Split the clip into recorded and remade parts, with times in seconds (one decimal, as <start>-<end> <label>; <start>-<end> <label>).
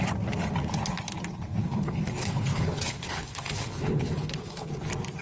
0.0-1.6 recorded; 1.6-4.7 remade; 4.7-5.2 recorded